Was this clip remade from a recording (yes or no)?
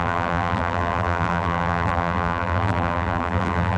yes